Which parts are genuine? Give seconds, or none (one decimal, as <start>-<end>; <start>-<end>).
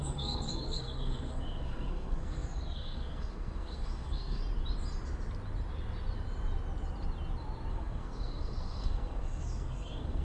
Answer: 4.4-7.7